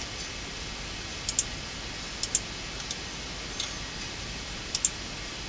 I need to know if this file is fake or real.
real